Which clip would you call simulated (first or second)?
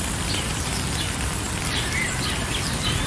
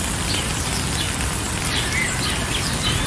first